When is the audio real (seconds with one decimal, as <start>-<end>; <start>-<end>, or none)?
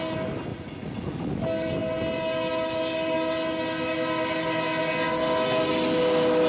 0.0-0.5; 1.4-6.5